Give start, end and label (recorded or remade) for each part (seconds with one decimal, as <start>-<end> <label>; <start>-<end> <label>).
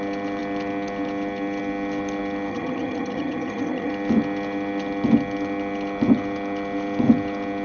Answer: 0.0-2.5 recorded; 2.5-3.9 remade; 3.9-7.6 recorded